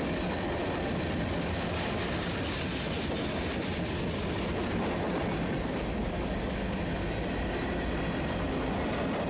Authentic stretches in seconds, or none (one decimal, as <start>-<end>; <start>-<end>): 0.0-9.3